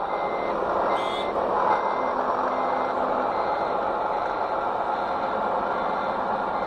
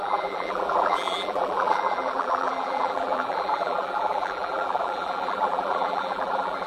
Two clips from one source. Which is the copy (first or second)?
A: second